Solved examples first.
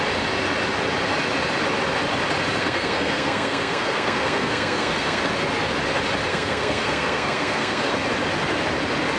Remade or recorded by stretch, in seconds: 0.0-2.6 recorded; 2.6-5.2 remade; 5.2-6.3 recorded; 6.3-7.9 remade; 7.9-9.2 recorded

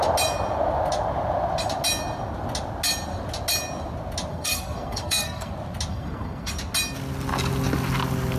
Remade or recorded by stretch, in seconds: 0.0-4.3 recorded; 4.3-5.5 remade; 5.5-5.9 recorded; 5.9-6.5 remade; 6.5-8.4 recorded

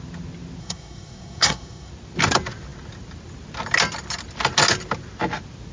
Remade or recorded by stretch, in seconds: 0.0-0.6 recorded; 0.6-1.9 remade; 1.9-5.7 recorded